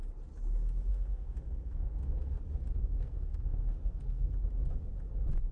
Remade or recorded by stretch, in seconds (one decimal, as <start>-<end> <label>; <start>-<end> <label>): 0.0-0.9 recorded; 0.9-2.4 remade; 2.4-2.8 recorded; 2.8-4.3 remade; 4.3-5.5 recorded